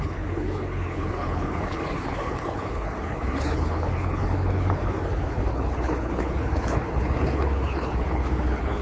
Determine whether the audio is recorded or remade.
remade